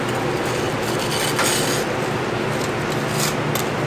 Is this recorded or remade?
recorded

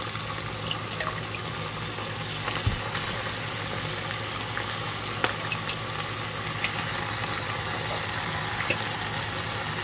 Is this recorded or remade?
recorded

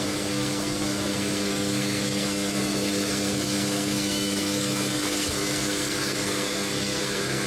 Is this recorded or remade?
remade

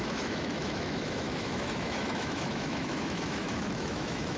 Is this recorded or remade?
remade